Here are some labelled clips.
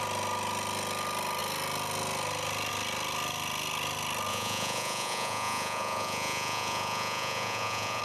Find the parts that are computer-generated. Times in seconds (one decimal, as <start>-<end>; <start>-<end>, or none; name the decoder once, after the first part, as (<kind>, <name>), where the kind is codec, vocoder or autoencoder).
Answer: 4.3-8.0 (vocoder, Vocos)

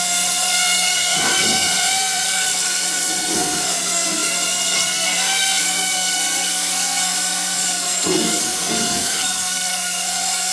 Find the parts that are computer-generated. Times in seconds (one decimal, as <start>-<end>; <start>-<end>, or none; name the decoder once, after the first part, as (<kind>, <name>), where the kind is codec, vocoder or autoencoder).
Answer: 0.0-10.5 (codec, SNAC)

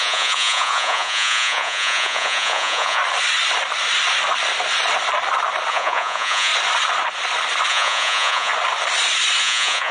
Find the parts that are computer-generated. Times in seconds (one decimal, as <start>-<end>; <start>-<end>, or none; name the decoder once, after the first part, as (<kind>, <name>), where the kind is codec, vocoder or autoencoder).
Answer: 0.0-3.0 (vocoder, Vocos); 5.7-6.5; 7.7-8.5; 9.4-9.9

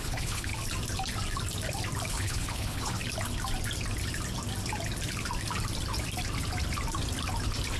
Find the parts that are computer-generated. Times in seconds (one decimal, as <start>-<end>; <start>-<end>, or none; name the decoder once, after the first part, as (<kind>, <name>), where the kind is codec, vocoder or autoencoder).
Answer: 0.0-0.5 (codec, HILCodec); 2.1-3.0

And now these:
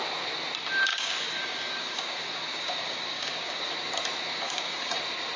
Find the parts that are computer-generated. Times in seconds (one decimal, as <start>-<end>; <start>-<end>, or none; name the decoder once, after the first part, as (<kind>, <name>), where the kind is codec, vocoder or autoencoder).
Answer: 0.9-3.6 (codec, DAC); 4.3-5.0